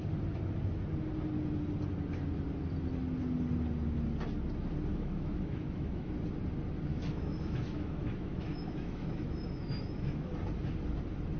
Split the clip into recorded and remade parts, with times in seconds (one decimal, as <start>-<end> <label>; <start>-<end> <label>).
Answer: 0.0-4.9 recorded; 4.9-6.1 remade; 6.1-6.9 recorded; 6.9-10.3 remade; 10.3-11.4 recorded